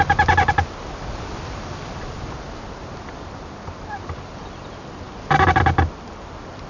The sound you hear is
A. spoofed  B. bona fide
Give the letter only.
B